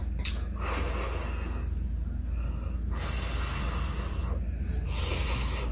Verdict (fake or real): real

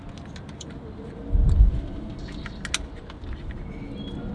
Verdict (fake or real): real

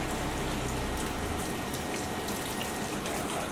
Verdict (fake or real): real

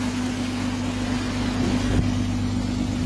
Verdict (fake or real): real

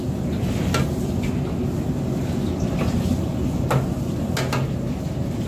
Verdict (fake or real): real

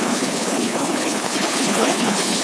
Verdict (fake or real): fake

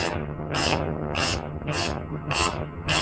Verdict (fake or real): fake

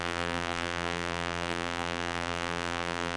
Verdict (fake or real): fake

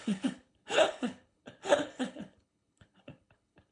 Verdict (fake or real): fake